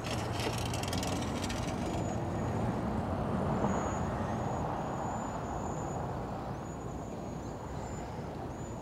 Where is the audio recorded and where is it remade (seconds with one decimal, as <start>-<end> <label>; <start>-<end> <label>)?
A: 0.0-8.8 recorded